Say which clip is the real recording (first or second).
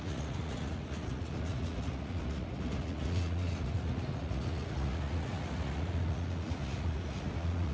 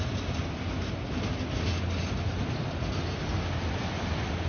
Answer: second